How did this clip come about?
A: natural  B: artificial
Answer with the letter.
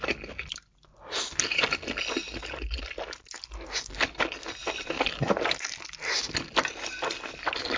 A